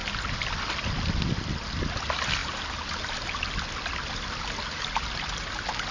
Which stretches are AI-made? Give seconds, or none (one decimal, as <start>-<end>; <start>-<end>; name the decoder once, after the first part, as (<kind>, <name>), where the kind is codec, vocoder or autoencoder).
none